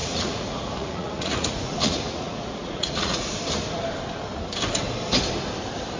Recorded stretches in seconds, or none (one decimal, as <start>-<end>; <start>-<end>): 3.3-6.0